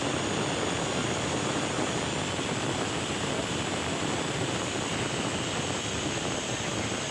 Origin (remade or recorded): recorded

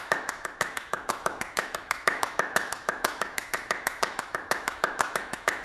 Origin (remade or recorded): remade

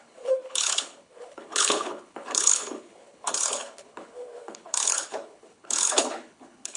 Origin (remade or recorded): remade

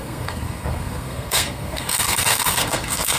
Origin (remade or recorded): remade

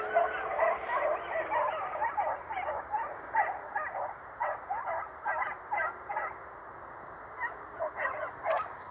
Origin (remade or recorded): recorded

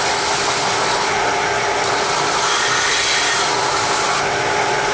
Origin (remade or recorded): recorded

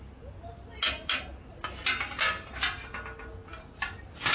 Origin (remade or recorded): recorded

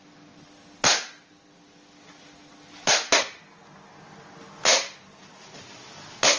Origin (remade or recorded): recorded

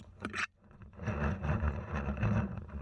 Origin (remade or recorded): remade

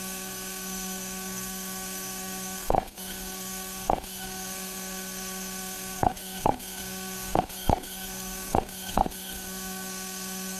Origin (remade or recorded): remade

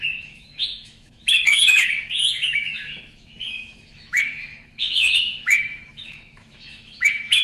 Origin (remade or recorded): remade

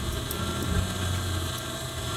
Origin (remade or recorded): recorded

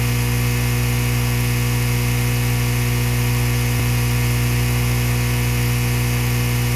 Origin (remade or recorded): recorded